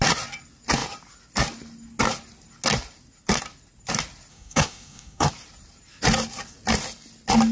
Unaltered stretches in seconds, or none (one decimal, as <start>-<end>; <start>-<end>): 0.0-4.3; 5.3-7.5